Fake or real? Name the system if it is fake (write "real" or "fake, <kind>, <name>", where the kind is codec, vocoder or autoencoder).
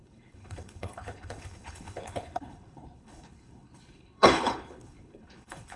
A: fake, codec, HILCodec